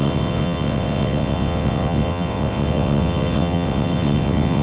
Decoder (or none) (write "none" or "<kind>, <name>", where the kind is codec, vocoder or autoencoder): vocoder, WaveNeXt